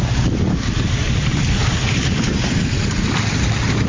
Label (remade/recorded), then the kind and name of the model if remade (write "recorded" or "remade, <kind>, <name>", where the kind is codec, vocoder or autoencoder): recorded